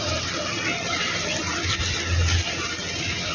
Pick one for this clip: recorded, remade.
recorded